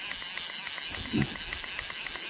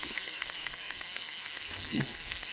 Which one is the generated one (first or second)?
second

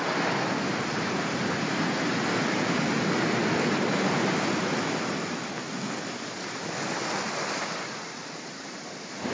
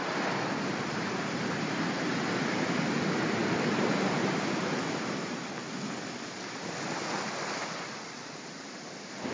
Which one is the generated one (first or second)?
second